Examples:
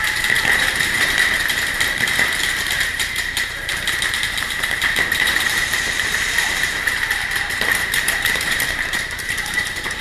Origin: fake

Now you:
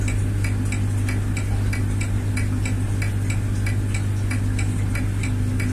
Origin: real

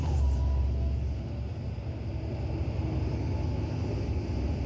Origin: real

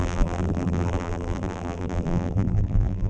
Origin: fake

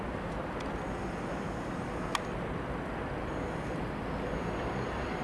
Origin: real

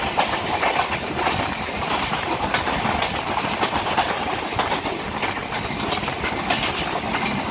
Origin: real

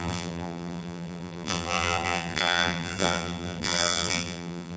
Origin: fake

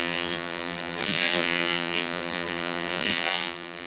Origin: fake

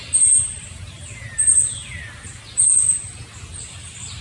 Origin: real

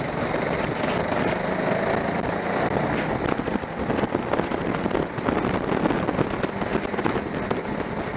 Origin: real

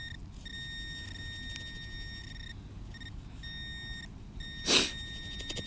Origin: real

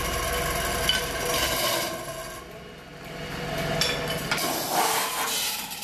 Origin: real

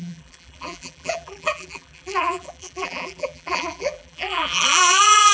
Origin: fake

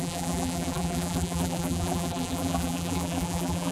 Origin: fake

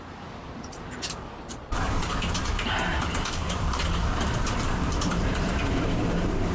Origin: fake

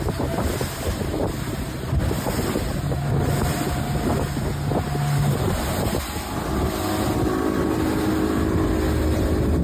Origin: real